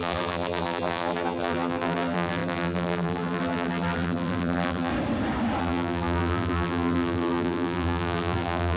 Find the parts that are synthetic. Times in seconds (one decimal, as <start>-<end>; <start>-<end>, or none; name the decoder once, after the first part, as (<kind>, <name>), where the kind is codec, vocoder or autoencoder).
0.0-4.9 (vocoder, BigVGAN v2); 5.6-8.8